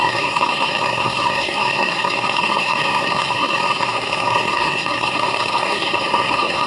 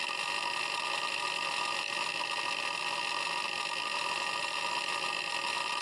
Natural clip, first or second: second